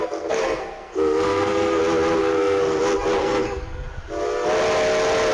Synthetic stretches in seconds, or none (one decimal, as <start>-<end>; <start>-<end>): 0.0-1.8; 2.2-2.8; 3.2-3.9